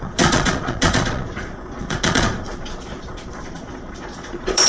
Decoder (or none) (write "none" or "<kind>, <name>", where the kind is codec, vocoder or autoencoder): vocoder, Vocos